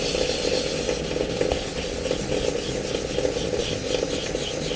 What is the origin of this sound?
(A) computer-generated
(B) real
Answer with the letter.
B